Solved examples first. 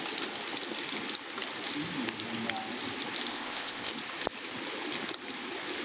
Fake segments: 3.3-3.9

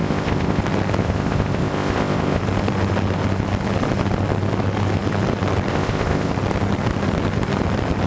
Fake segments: 0.0-0.6; 1.0-2.4; 5.7-6.3

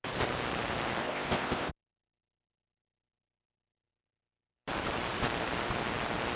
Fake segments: 1.0-1.7

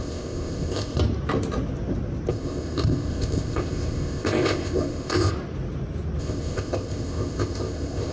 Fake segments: 0.0-1.0; 2.3-5.3; 6.2-8.1

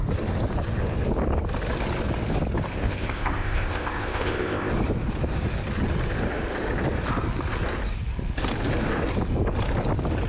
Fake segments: 2.7-4.7

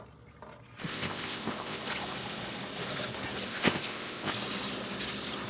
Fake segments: 0.8-1.8; 3.5-4.3

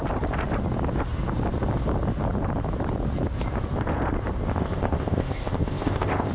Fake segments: 4.5-6.3

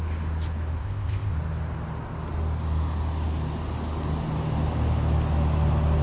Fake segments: 0.8-1.3